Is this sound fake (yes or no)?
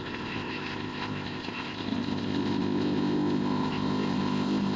yes